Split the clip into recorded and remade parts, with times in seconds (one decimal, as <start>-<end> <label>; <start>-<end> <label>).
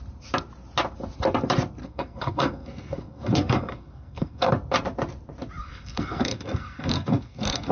0.0-1.8 recorded; 1.8-4.5 remade; 4.5-5.6 recorded; 5.6-7.7 remade